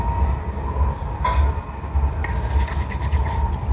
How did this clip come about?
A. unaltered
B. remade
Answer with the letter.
A